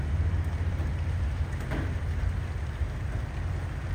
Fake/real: real